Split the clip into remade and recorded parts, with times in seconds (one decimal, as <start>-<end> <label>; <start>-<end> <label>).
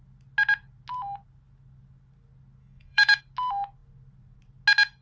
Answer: 0.0-2.6 recorded; 2.6-3.2 remade; 3.2-5.0 recorded